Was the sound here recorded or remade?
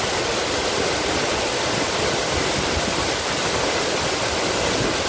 recorded